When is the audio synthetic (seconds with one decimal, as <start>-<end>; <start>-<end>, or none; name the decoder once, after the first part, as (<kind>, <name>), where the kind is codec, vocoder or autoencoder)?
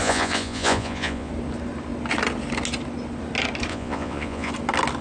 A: 0.0-1.3 (vocoder, Vocos); 3.7-4.5